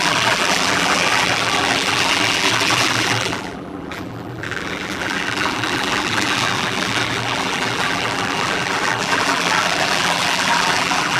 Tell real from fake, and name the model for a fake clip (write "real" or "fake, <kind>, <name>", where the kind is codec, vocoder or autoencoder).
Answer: fake, vocoder, BigVGAN v2